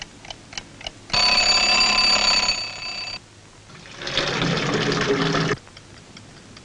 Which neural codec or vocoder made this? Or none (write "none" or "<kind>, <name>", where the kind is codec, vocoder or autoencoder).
none